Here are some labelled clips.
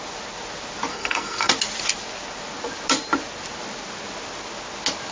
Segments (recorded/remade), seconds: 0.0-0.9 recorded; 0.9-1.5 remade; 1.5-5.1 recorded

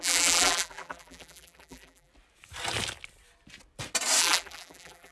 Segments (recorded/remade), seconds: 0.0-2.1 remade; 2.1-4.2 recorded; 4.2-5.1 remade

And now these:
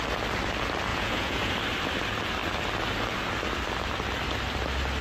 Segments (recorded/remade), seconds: 0.0-0.9 recorded; 0.9-1.5 remade; 1.5-5.0 recorded

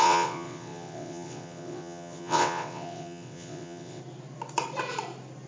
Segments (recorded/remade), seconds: 0.0-4.0 remade; 4.0-5.5 recorded